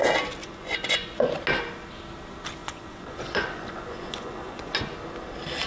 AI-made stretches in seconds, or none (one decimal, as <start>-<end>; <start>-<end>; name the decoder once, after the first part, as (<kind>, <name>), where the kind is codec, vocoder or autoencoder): 0.4-1.3 (vocoder, Vocos); 2.6-4.7